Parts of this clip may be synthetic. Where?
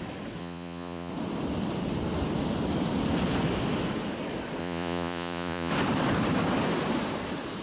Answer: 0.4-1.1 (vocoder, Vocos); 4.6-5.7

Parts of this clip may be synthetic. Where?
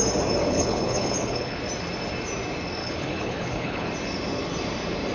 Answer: 0.4-1.6 (codec, HILCodec); 2.8-3.9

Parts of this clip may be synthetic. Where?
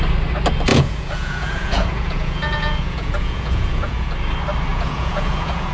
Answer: 0.7-4.1 (vocoder, Vocos); 4.7-5.7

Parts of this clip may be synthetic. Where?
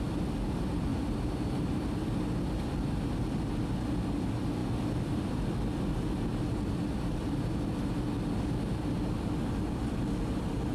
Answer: 0.9-1.8 (vocoder, BigVGAN v2)